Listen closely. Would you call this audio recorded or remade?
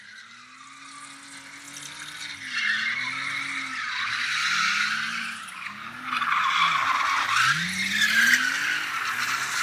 recorded